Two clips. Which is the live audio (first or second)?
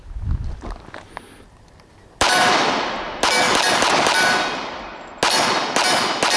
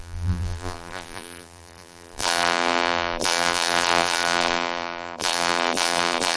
first